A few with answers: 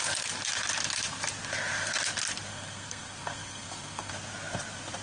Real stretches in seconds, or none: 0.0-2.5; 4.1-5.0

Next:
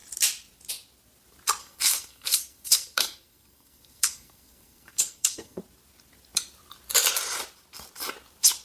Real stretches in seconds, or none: 0.0-1.6; 5.6-8.6

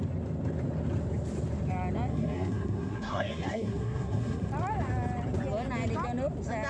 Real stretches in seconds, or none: 0.0-2.1; 4.5-6.7